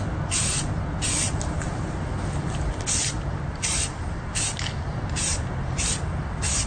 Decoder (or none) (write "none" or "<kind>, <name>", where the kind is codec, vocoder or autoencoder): none